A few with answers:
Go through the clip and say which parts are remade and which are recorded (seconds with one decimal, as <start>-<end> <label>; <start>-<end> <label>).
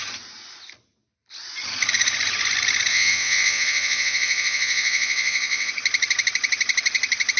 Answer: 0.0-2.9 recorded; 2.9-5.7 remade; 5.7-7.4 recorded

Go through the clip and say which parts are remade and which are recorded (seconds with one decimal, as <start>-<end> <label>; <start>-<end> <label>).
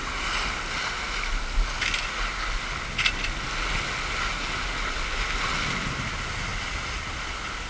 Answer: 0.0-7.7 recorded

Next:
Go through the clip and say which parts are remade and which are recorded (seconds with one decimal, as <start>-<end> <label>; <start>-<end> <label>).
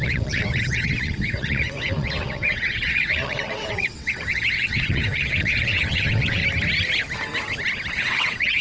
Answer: 0.0-6.4 remade; 6.4-7.9 recorded; 7.9-8.6 remade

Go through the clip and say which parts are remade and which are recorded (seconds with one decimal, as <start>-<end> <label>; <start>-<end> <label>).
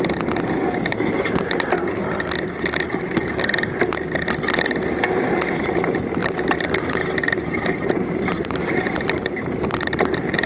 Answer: 0.0-6.2 recorded; 6.2-10.5 remade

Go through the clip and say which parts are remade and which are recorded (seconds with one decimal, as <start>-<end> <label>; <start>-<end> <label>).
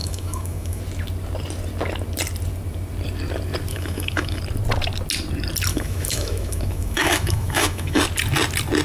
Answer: 0.0-0.8 remade; 0.8-3.7 recorded; 3.7-4.4 remade; 4.4-5.7 recorded; 5.7-8.0 remade; 8.0-8.8 recorded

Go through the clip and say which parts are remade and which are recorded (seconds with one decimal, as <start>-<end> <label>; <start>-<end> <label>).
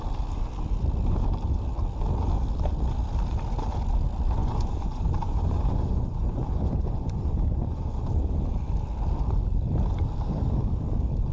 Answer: 0.0-4.4 recorded; 4.4-8.0 remade; 8.0-11.3 recorded